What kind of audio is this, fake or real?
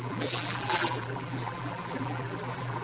fake